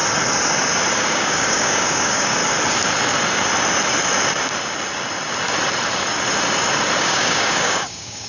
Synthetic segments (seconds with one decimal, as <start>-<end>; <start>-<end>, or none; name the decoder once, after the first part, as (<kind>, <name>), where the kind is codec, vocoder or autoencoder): 0.9-2.4 (codec, DAC); 7.0-8.3

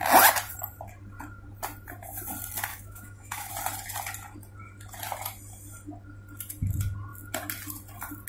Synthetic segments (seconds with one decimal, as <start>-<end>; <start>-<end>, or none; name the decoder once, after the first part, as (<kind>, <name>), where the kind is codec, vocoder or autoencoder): 2.7-3.5 (autoencoder, DAC-VAE)